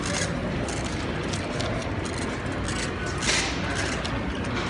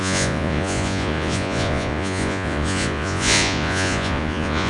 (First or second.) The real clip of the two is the first